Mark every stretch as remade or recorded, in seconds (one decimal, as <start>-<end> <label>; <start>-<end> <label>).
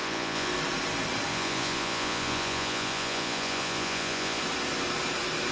0.0-0.5 remade; 0.5-1.3 recorded; 1.3-4.4 remade; 4.4-5.5 recorded